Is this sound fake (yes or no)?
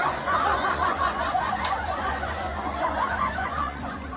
yes